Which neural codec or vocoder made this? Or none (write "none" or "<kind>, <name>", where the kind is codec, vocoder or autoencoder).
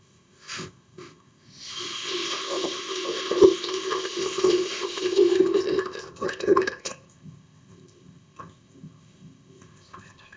codec, ZipCodec